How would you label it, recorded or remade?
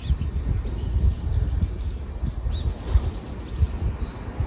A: recorded